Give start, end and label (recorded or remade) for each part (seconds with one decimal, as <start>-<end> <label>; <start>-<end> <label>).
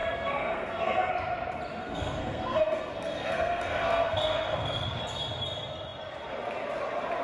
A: 0.0-1.1 remade; 1.1-1.8 recorded; 1.8-5.0 remade; 5.0-7.2 recorded